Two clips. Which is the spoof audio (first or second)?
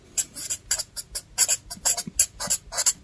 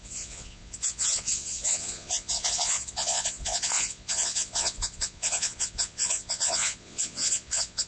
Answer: second